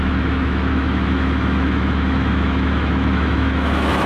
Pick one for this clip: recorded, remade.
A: remade